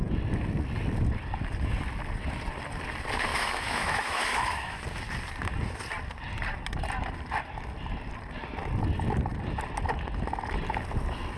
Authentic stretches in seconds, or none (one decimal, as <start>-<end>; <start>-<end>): 0.0-3.3; 4.8-11.4